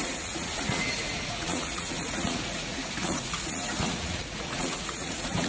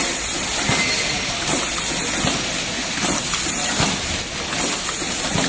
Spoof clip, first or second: first